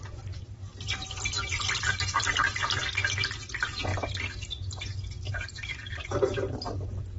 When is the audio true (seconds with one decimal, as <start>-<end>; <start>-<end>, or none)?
0.0-7.2